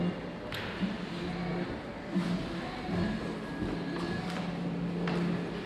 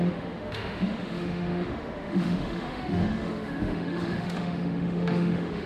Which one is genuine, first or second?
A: first